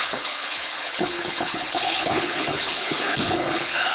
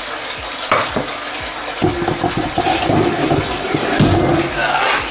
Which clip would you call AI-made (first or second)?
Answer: first